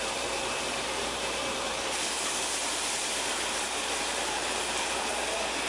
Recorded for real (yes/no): no